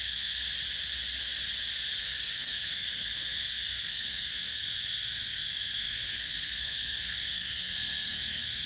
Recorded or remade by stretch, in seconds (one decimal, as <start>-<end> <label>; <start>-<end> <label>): 0.0-0.4 remade; 0.4-2.0 recorded; 2.0-8.7 remade

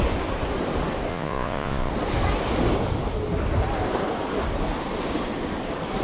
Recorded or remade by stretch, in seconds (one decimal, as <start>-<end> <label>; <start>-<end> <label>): 0.0-1.1 recorded; 1.1-1.9 remade; 1.9-6.0 recorded

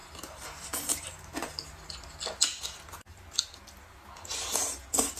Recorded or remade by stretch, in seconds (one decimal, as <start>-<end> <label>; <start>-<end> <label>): 0.0-1.7 remade; 1.7-5.2 recorded